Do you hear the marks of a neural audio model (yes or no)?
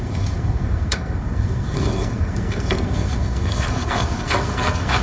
yes